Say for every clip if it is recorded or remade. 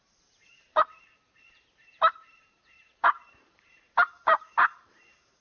remade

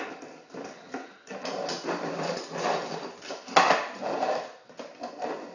recorded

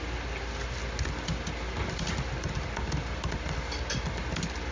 recorded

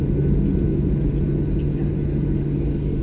recorded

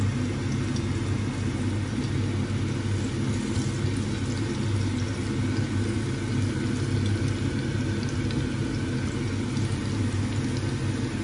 recorded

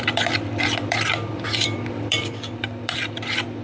remade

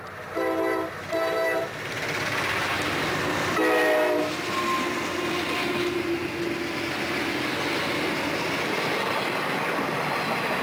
recorded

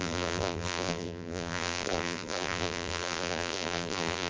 remade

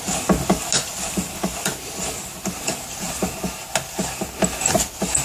recorded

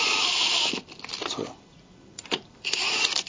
remade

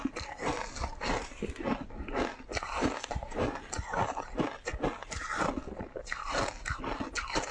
recorded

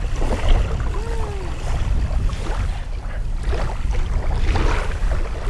recorded